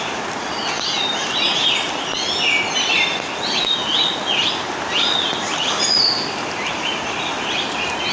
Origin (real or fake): real